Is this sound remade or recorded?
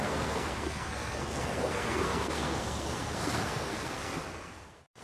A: remade